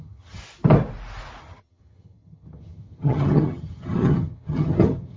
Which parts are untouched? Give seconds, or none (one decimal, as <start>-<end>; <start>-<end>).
0.4-1.4